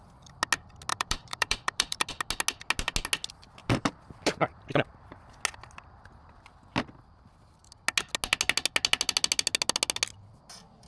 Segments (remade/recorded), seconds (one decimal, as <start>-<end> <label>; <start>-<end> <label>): 0.0-0.9 recorded; 0.9-2.1 remade; 2.1-3.6 recorded; 3.6-5.4 remade; 5.4-10.9 recorded